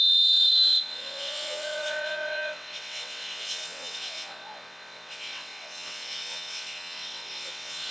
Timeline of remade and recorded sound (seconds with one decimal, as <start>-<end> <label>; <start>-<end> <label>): 0.0-7.9 remade